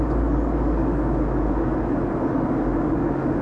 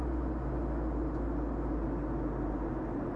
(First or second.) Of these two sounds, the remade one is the first